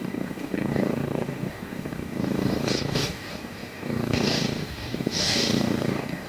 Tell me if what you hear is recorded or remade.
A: remade